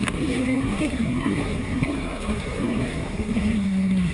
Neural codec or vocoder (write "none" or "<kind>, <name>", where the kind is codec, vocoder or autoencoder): codec, SNAC